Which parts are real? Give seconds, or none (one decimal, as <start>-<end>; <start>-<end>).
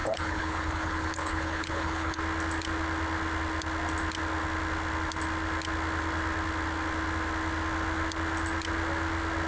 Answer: 2.2-9.5